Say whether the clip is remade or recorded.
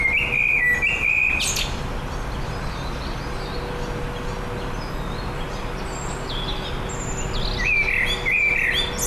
recorded